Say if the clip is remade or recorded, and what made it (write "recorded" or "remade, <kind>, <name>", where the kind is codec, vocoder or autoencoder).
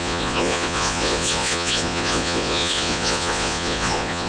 remade, vocoder, Vocos